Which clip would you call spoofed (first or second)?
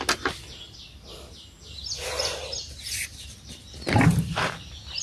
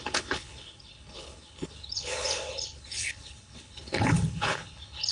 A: second